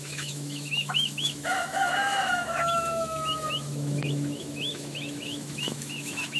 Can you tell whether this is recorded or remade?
remade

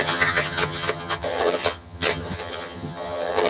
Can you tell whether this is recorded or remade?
remade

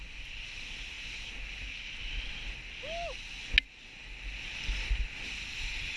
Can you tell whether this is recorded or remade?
recorded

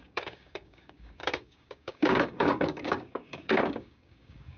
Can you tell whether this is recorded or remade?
remade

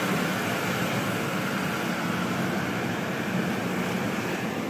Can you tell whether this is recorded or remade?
recorded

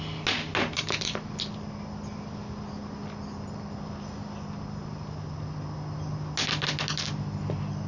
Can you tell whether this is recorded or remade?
recorded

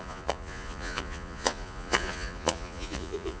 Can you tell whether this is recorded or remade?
remade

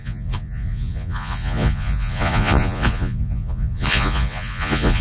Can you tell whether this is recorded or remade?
remade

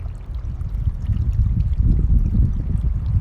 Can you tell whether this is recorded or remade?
recorded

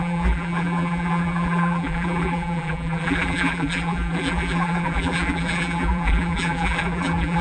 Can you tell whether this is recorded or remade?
remade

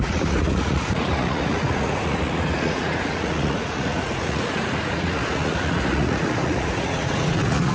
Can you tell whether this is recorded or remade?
remade